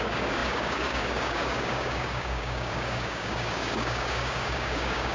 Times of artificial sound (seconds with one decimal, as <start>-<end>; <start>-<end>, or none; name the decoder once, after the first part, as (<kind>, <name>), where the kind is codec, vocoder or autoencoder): 0.0-5.1 (codec, DAC)